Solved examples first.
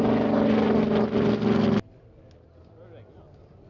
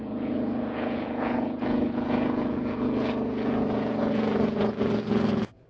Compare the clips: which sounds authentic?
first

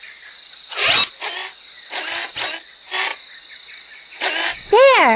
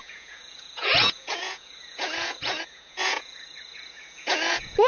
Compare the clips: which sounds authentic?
first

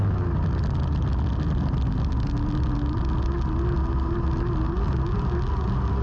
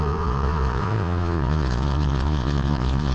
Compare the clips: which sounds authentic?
first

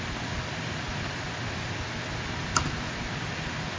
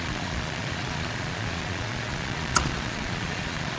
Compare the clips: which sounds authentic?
first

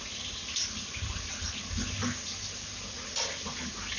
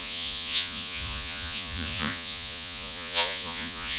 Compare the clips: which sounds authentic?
first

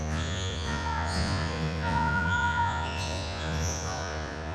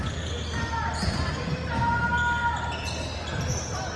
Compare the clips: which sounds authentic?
second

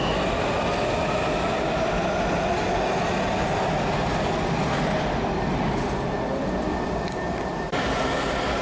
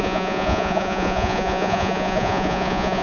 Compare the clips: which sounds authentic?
first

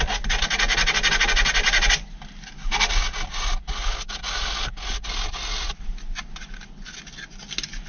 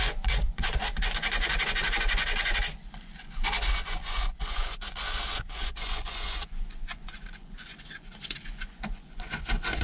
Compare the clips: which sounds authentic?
first